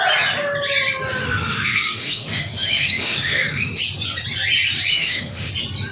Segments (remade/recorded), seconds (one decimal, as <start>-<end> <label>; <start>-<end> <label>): 0.0-1.2 recorded; 1.2-3.8 remade; 3.8-4.9 recorded; 4.9-5.5 remade; 5.5-5.9 recorded